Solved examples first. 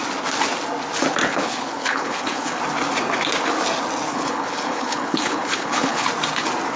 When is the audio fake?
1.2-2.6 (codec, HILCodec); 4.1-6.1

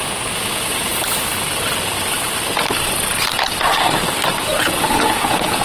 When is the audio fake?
0.0-0.9 (vocoder, Vocos); 4.3-5.6